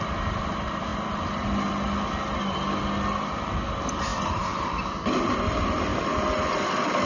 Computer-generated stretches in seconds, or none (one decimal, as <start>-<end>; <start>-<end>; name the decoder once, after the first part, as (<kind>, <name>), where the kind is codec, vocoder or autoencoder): none